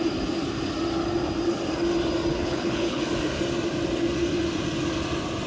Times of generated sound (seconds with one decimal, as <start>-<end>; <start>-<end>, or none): 2.3-3.0

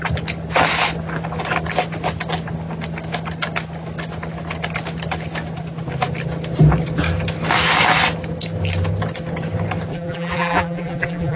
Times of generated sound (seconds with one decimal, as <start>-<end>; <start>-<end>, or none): 9.9-11.4

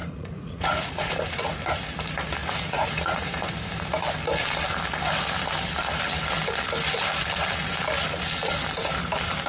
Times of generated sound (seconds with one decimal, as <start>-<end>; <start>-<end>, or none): 0.0-1.6; 2.4-3.5

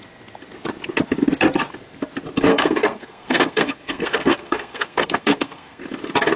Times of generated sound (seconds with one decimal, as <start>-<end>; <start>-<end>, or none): 2.5-5.8